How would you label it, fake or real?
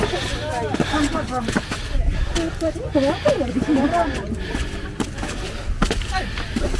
real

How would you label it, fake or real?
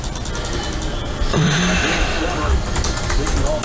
real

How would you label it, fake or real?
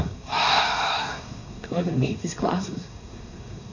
fake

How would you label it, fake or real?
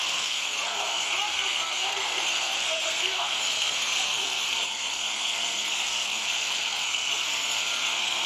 fake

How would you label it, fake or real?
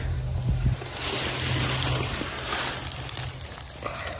real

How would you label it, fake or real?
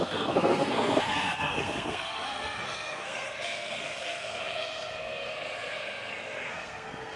fake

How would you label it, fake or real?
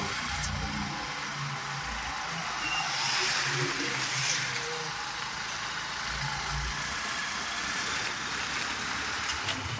real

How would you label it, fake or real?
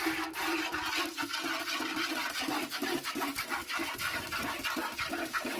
real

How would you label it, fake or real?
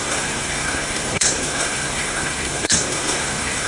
fake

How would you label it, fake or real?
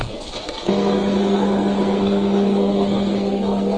fake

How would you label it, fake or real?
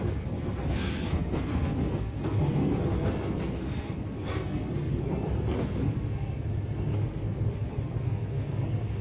fake